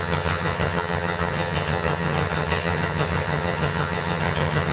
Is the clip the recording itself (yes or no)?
no